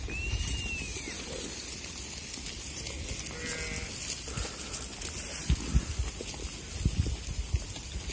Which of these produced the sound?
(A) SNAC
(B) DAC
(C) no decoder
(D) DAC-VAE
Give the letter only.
C